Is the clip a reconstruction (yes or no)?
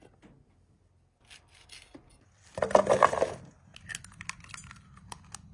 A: no